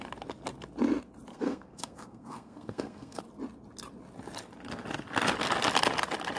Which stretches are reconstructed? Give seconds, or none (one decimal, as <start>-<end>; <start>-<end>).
1.3-3.2